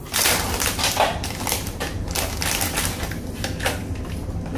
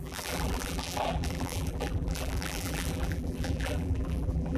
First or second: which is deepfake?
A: second